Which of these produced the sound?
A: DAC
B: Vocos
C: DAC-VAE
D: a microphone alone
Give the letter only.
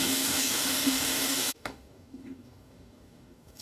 A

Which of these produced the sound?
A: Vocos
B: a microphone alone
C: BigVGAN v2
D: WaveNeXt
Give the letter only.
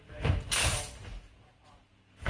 B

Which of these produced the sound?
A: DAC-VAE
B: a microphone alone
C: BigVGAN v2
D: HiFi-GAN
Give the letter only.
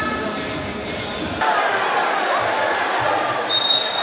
B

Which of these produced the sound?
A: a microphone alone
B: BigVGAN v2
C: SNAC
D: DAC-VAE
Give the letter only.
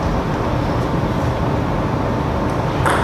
A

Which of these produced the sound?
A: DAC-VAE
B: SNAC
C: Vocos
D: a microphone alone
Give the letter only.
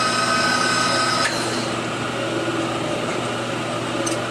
D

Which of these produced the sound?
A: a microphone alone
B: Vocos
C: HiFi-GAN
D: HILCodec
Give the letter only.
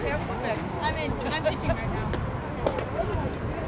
A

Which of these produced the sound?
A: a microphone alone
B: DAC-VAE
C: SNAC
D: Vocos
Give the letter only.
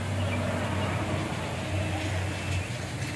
A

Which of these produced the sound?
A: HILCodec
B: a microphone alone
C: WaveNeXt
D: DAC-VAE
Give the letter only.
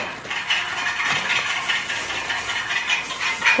B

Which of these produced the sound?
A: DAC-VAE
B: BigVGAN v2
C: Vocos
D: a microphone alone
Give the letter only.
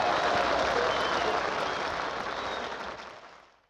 D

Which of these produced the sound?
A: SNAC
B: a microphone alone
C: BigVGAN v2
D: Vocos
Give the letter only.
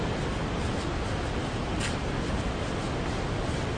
B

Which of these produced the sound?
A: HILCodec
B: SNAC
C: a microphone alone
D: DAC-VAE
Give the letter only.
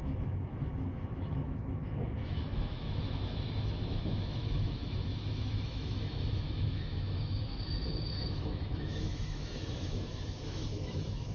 D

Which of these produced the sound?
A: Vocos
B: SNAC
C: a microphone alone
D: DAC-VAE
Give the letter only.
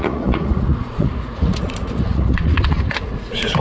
A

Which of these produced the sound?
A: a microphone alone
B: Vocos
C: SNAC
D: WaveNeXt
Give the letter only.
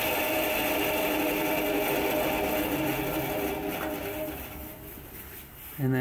A